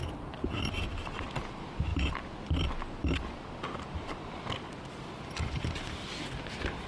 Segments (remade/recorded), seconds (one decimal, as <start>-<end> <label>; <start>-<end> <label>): 0.0-0.6 remade; 0.6-6.9 recorded